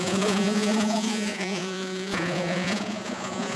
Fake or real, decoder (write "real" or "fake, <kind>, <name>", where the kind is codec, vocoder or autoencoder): fake, vocoder, Vocos